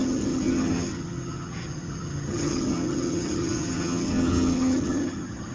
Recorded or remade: remade